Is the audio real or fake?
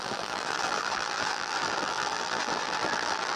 fake